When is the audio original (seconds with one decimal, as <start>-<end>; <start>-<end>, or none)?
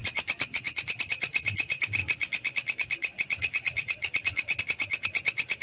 1.0-2.0; 4.6-5.6